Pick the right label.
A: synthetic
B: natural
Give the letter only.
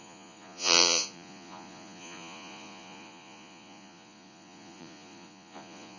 A